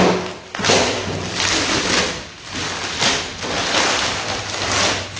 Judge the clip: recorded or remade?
recorded